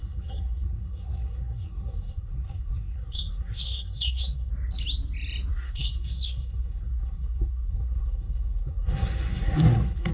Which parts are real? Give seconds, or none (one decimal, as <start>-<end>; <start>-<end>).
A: 4.5-5.5